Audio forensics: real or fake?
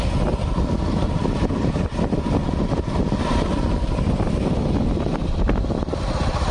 real